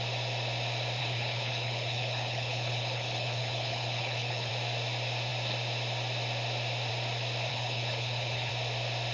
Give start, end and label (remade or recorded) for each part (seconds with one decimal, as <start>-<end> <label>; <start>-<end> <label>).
0.0-1.0 recorded; 1.0-4.5 remade; 4.5-7.5 recorded; 7.5-8.5 remade; 8.5-9.1 recorded